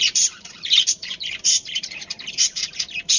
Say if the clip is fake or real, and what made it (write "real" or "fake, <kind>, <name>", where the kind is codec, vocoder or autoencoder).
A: fake, vocoder, BigVGAN v2